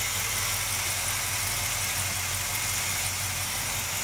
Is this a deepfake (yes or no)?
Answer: no